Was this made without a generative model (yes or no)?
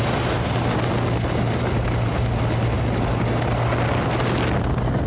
yes